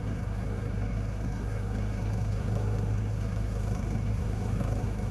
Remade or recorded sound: remade